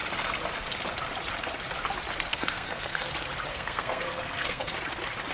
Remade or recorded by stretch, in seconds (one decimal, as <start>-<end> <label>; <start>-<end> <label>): 0.0-2.3 recorded; 2.3-3.1 remade; 3.1-3.5 recorded; 3.5-4.7 remade; 4.7-5.3 recorded